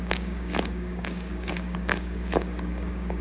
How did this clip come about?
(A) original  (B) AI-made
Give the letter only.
B